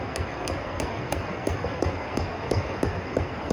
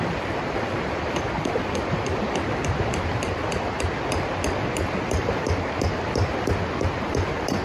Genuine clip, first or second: second